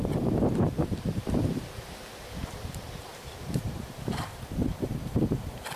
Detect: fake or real fake